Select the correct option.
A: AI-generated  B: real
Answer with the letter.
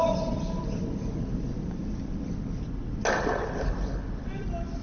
B